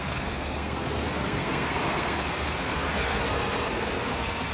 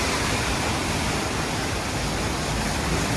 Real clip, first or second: second